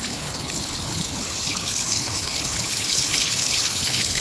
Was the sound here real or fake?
fake